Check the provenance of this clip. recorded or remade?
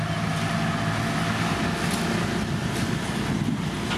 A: recorded